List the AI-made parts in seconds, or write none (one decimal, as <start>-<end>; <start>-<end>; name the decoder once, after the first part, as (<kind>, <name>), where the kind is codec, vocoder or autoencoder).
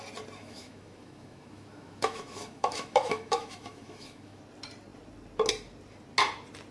0.4-4.4 (autoencoder, DAC-VAE)